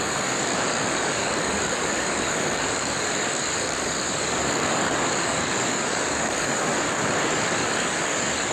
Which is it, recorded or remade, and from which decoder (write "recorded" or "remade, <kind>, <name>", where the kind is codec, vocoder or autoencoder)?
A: remade, codec, DAC